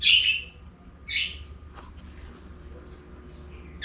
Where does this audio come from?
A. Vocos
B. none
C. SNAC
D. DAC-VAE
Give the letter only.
B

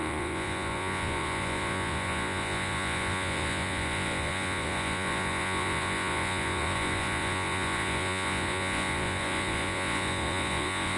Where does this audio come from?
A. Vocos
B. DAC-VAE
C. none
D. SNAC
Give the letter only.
A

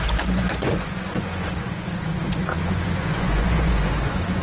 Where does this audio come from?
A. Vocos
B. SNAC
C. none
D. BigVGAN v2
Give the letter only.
A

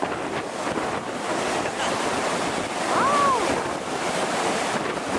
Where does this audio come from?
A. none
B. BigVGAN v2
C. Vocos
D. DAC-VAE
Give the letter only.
A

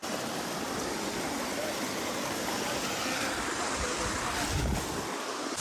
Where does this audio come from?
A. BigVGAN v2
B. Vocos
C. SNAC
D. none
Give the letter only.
D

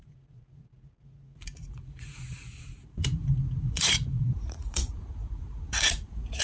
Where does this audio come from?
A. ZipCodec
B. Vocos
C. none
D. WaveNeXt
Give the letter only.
B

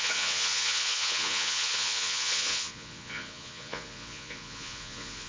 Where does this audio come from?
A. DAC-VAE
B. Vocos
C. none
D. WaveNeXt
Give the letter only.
B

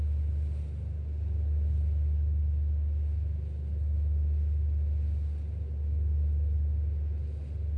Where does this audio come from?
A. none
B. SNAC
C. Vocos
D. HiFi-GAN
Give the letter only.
A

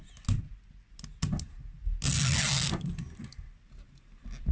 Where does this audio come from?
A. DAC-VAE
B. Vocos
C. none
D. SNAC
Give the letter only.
C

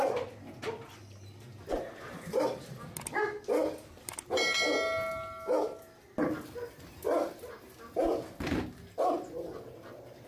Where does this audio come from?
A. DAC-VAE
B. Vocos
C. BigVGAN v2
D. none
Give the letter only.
D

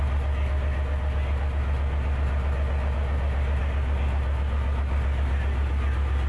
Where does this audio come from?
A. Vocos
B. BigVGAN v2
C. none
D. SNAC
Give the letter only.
C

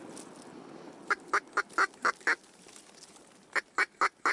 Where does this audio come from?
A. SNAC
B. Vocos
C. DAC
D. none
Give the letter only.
D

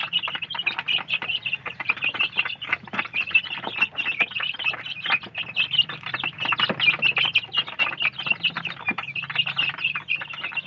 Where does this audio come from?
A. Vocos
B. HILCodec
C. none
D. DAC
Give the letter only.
C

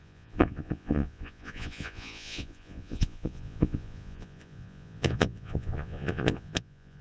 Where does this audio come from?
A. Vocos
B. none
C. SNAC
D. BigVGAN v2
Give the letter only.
A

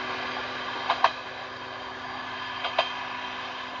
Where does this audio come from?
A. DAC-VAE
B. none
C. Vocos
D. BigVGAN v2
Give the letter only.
B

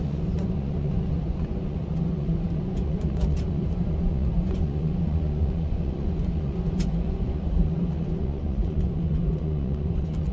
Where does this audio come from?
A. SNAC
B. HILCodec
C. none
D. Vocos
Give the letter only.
D